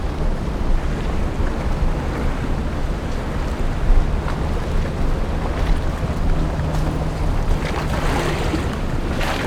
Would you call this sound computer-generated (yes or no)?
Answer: no